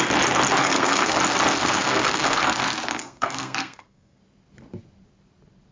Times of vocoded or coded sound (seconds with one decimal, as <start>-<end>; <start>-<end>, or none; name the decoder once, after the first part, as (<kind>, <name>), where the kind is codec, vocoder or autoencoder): 0.6-1.2 (codec, SNAC); 1.6-2.4; 3.0-4.2